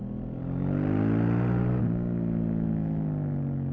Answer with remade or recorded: recorded